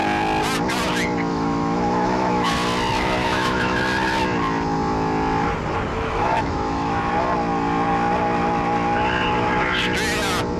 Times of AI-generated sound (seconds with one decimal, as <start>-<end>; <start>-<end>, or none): 1.3-2.5; 3.2-3.8; 5.9-7.1